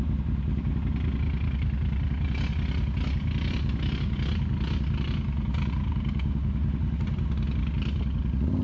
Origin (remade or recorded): recorded